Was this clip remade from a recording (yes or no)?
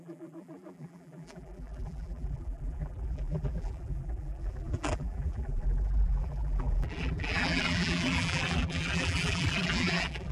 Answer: yes